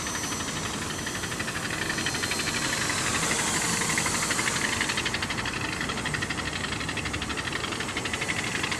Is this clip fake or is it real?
real